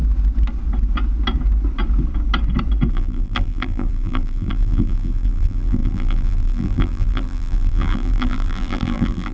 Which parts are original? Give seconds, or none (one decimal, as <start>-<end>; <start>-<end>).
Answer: 0.0-2.9